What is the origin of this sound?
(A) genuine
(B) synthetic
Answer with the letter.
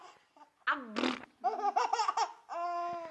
A